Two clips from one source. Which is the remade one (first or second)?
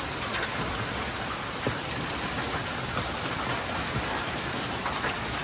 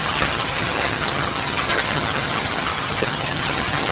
second